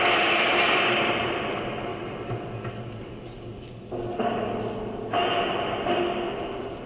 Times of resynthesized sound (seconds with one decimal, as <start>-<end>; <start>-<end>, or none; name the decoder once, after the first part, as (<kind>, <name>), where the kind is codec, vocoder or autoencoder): none